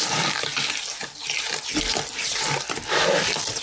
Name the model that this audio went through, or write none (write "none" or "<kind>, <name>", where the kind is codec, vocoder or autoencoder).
none